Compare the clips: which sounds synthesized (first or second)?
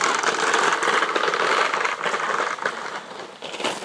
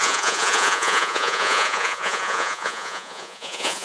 second